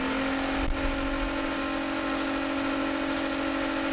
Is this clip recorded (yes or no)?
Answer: yes